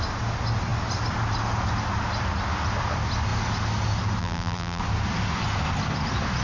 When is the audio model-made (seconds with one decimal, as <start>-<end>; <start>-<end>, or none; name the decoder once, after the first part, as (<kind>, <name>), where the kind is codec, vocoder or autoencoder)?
4.2-4.8 (vocoder, BigVGAN v2)